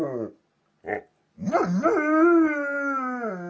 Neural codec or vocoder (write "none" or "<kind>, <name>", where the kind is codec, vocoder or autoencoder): none